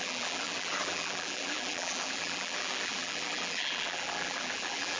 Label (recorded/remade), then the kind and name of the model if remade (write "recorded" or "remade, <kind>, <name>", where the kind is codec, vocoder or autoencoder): remade, vocoder, BigVGAN v2